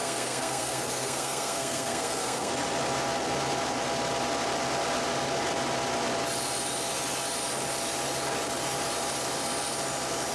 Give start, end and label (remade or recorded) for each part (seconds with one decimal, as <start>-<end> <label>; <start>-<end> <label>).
0.0-2.5 remade; 2.5-10.3 recorded